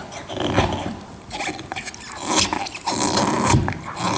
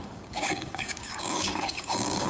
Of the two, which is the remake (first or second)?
second